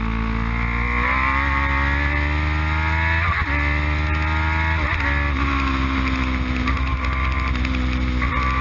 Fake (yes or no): no